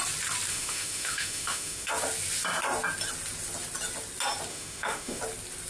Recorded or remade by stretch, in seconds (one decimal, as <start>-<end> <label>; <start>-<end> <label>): 0.0-0.5 recorded; 0.5-1.9 remade; 1.9-4.5 recorded; 4.5-5.2 remade; 5.2-5.7 recorded